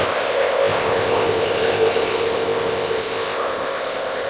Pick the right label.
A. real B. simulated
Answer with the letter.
B